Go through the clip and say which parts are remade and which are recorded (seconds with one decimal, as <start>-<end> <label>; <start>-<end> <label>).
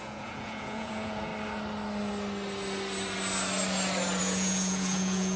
0.0-1.3 remade; 1.3-4.2 recorded; 4.2-5.4 remade